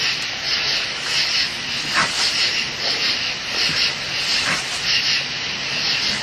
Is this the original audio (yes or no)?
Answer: yes